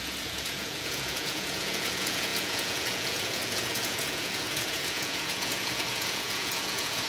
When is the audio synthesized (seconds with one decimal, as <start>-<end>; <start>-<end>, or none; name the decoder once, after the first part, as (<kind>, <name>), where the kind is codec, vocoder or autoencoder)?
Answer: 0.0-7.1 (vocoder, Vocos)